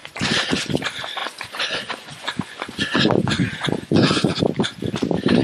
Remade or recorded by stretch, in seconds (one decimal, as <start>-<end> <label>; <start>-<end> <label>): 0.0-0.6 remade; 0.6-1.2 recorded; 1.2-4.4 remade; 4.4-5.4 recorded